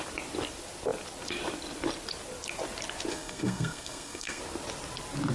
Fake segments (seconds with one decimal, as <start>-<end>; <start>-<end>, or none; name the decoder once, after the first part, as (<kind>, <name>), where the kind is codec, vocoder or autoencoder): 3.1-4.4 (codec, SNAC)